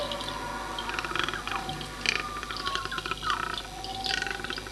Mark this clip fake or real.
real